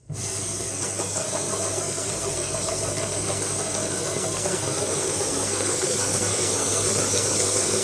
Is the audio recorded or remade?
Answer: remade